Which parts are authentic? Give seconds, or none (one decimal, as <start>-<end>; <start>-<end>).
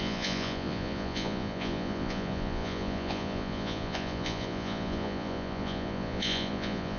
none